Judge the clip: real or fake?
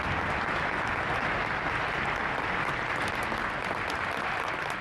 real